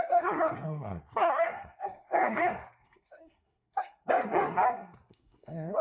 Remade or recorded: remade